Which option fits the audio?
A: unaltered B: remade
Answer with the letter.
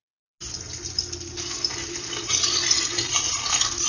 A